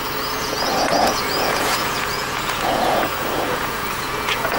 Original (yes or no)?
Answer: no